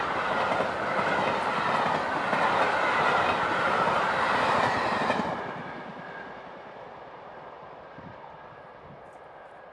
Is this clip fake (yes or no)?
no